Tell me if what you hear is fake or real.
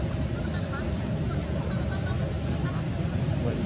real